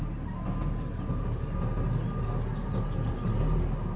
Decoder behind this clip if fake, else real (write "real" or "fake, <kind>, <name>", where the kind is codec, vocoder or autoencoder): real